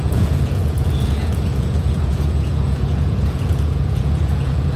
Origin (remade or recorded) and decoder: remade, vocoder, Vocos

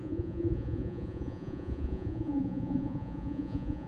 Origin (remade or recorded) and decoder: remade, vocoder, Vocos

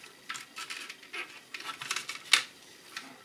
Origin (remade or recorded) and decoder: recorded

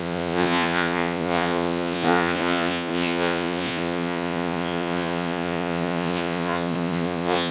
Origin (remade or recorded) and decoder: remade, vocoder, Vocos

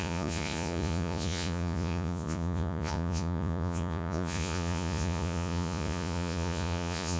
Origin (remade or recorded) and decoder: remade, vocoder, Vocos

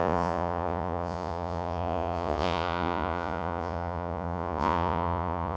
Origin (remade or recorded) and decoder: remade, vocoder, Vocos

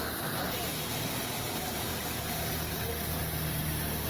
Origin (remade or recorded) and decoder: recorded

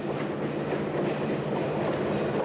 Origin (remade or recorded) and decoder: recorded